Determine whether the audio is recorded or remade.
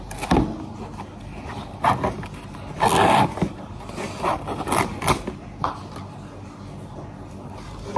recorded